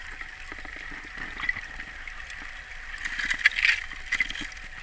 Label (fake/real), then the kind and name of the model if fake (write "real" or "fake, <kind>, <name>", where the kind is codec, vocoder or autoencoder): real